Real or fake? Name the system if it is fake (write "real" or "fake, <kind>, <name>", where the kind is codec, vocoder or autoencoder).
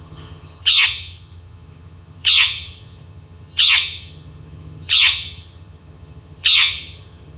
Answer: fake, vocoder, HiFi-GAN